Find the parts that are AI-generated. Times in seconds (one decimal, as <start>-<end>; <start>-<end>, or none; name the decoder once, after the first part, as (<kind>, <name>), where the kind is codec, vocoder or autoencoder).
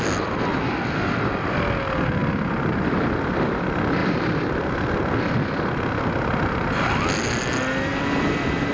none